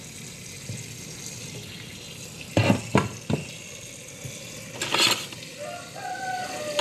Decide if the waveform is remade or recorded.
recorded